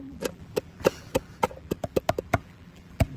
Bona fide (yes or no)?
no